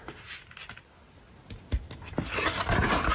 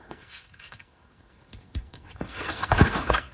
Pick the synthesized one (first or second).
second